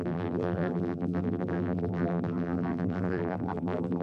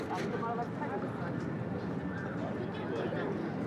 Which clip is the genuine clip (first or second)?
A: second